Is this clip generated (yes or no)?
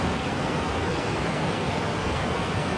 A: yes